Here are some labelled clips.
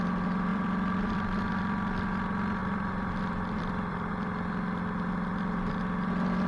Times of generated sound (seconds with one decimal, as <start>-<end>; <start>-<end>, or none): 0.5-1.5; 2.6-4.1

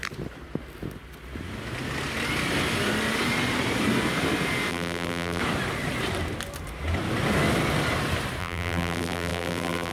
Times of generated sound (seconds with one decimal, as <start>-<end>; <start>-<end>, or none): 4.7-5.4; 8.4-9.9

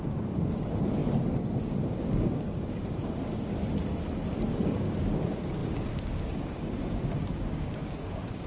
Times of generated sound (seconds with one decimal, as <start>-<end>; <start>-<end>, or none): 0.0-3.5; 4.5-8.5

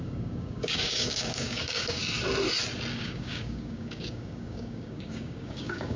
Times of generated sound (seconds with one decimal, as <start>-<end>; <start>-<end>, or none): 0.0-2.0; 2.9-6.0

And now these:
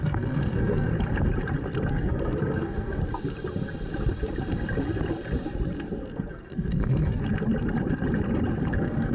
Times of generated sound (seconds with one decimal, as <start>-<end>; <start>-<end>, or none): 0.0-0.9; 1.9-3.0; 6.3-7.2; 8.7-9.1